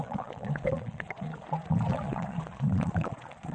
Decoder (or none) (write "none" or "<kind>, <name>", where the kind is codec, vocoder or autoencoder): vocoder, Vocos